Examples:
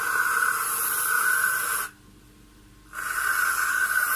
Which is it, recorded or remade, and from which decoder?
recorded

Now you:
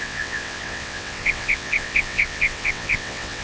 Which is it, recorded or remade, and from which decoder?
remade, vocoder, WaveNeXt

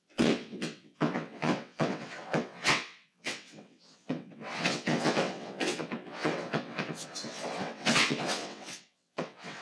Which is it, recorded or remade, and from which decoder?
remade, vocoder, WaveNeXt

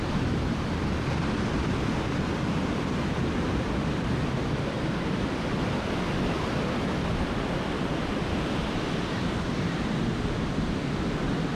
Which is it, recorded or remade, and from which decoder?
recorded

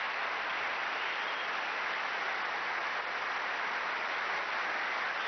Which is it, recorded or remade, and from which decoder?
recorded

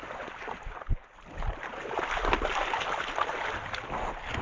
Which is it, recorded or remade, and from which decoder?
recorded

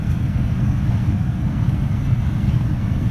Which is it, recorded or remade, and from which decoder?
remade, codec, SNAC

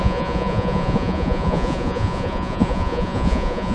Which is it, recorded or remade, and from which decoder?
remade, vocoder, Vocos